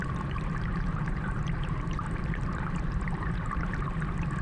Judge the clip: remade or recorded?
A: remade